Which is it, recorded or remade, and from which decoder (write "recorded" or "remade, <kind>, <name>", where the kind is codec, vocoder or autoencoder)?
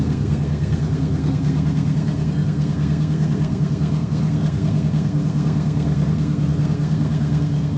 remade, codec, SNAC